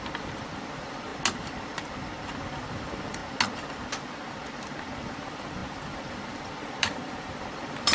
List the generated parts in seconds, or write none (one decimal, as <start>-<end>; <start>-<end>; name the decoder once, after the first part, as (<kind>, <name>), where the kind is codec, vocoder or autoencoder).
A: 0.0-1.1 (vocoder, BigVGAN v2); 2.7-3.2; 5.1-7.9